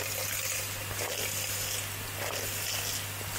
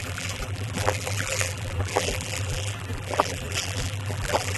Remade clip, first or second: second